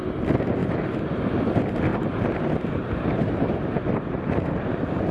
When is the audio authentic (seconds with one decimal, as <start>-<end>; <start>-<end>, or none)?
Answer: 0.0-0.6; 1.2-1.9

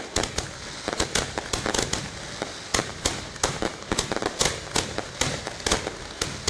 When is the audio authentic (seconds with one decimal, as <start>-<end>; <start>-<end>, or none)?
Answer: 0.0-2.7; 4.4-6.5

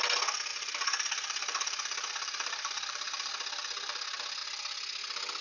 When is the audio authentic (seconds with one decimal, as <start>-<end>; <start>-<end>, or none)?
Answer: 0.0-0.5; 3.3-5.4

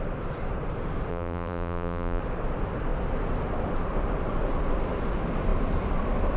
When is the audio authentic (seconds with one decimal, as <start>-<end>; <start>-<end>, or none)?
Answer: 0.0-1.1; 2.2-6.4

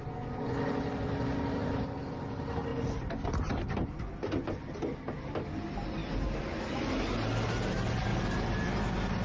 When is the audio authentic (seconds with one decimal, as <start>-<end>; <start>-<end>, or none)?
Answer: 0.0-2.7; 3.5-6.0; 6.9-9.2

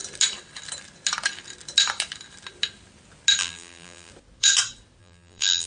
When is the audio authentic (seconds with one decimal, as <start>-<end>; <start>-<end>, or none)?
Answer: 0.0-3.4; 4.1-5.0

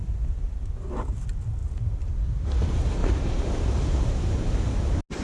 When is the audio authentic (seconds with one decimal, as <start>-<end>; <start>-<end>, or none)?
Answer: 0.0-3.0; 3.6-5.2

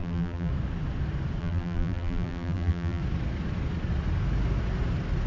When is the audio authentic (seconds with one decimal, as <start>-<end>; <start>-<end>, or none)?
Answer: 0.5-1.4; 3.0-5.3